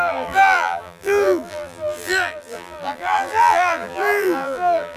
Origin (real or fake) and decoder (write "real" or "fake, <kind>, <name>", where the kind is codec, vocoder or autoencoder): fake, vocoder, BigVGAN v2